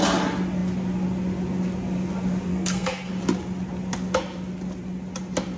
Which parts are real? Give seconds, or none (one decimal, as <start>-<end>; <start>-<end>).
0.0-2.5; 3.1-5.6